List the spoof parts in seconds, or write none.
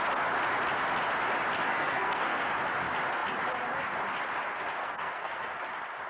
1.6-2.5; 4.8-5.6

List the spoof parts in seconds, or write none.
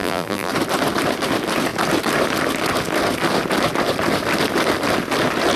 0.0-0.5